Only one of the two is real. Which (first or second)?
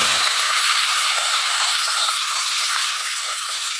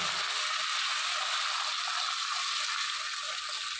second